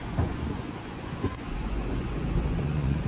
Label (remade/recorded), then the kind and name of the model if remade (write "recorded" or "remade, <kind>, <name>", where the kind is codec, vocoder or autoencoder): remade, vocoder, Vocos